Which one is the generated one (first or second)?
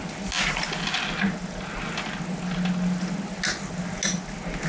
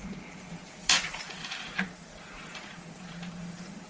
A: second